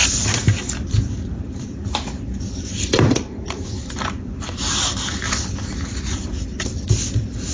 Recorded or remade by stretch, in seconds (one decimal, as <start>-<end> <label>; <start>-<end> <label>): 0.0-7.5 remade